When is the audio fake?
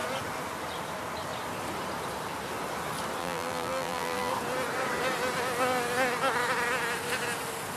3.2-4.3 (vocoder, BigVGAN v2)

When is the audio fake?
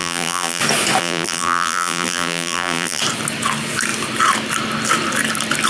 0.0-0.6 (vocoder, BigVGAN v2); 1.0-3.0